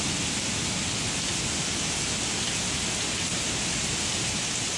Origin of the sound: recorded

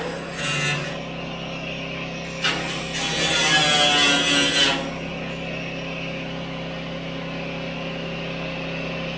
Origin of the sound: recorded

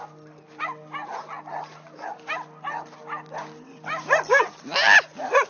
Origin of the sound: recorded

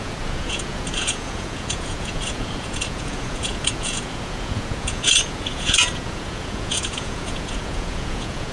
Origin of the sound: remade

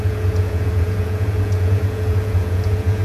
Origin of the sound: remade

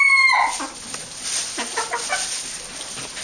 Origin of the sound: recorded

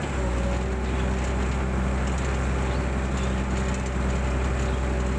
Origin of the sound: recorded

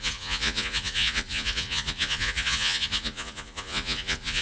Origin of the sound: remade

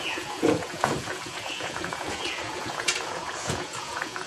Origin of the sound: remade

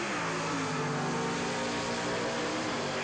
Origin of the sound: recorded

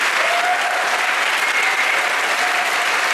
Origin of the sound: recorded